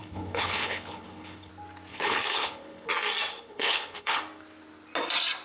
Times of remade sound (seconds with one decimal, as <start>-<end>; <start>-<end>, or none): 0.0-1.5; 1.9-2.9; 3.3-4.2